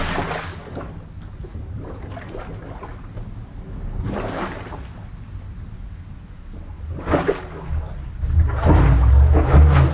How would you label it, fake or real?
real